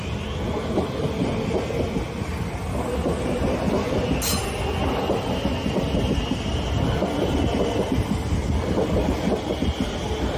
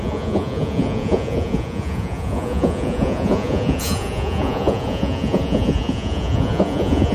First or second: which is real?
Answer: first